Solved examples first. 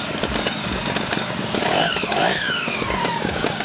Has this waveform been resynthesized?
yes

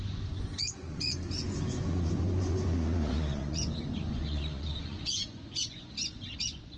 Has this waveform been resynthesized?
yes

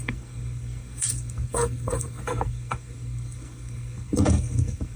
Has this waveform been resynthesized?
yes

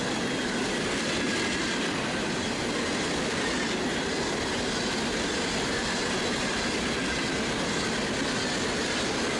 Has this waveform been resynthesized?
no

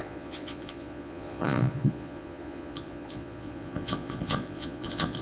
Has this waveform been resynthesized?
yes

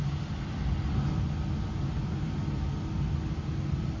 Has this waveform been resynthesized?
no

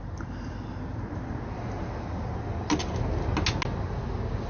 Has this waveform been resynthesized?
no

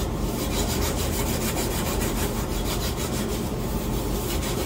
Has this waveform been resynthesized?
yes